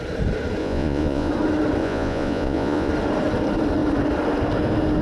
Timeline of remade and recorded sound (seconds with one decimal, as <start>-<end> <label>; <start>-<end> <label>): 0.0-0.6 recorded; 0.6-1.3 remade; 1.3-1.8 recorded; 1.8-2.9 remade; 2.9-5.0 recorded